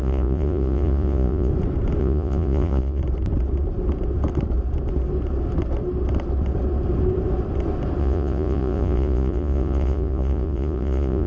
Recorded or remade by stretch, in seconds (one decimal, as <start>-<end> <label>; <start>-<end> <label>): 0.0-1.5 remade; 1.5-2.0 recorded; 2.0-3.0 remade; 3.0-8.0 recorded; 8.0-11.3 remade